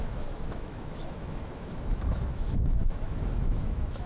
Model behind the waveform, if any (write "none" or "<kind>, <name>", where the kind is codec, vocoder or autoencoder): autoencoder, DAC-VAE